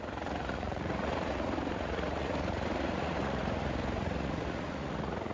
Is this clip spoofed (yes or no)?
yes